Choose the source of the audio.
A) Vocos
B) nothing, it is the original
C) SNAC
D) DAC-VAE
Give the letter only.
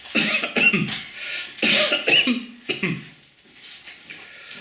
B